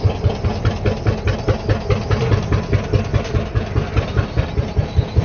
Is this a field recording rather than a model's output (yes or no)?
yes